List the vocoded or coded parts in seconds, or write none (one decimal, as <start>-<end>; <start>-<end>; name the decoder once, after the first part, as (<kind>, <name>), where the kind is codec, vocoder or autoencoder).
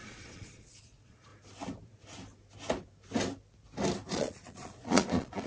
0.0-1.3 (vocoder, Vocos); 4.1-5.5